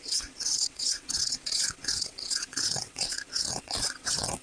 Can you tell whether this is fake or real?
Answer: fake